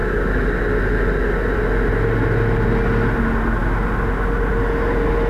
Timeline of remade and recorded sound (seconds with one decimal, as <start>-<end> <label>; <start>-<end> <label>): 0.0-5.3 recorded